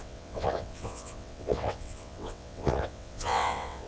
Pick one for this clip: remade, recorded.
remade